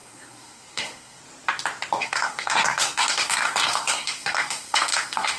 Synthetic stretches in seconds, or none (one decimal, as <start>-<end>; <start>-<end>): 0.0-1.2; 2.0-5.4